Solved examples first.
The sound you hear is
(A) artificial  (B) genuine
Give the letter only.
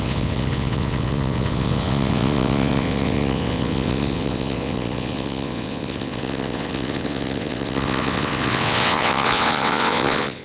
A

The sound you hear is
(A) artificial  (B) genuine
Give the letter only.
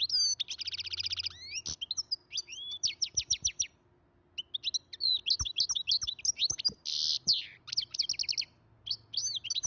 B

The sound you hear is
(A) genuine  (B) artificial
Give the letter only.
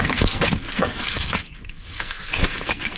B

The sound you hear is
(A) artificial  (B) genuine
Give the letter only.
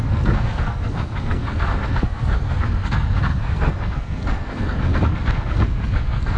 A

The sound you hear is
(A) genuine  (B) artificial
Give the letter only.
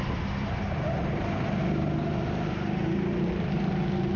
A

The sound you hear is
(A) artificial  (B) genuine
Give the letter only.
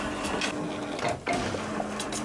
B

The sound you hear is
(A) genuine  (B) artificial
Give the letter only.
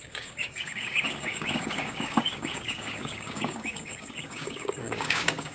B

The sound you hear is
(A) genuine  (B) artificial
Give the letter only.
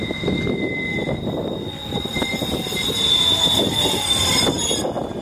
A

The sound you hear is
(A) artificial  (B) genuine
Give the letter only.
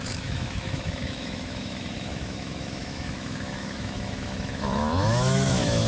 A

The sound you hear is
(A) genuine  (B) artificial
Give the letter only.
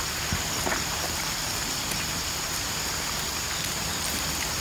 A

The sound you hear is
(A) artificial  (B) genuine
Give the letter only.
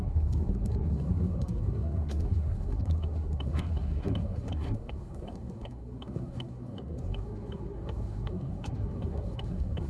A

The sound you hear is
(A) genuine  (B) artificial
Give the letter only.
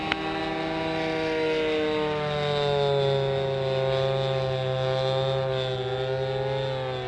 A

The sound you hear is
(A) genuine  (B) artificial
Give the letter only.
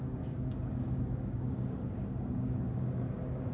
B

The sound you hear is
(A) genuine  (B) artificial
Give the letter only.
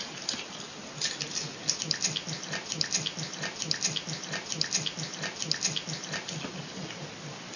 A